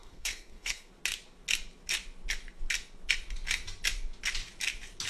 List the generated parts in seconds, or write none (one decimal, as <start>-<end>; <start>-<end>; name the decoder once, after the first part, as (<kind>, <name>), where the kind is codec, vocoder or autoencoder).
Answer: 0.0-0.9 (codec, SNAC)